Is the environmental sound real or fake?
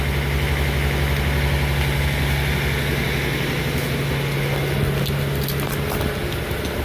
real